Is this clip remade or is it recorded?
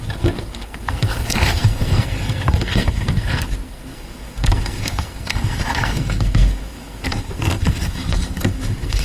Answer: remade